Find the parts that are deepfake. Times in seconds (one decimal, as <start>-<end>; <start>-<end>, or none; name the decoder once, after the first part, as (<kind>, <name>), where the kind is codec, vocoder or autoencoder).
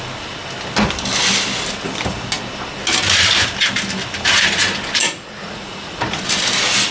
5.0-6.2 (vocoder, Vocos)